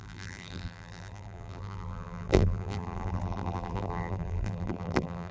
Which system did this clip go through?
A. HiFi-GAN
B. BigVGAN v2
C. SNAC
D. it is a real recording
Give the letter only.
B